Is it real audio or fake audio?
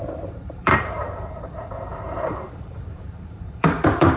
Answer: fake